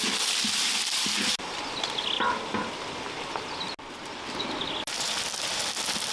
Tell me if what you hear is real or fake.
real